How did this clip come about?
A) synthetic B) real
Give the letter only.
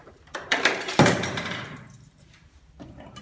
A